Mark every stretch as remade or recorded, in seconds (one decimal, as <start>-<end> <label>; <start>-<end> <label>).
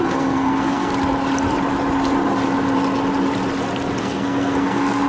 0.0-0.9 remade; 0.9-4.0 recorded; 4.0-5.1 remade